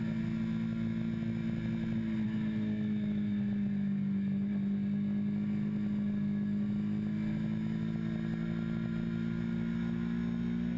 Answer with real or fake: real